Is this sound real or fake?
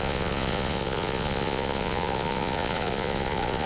fake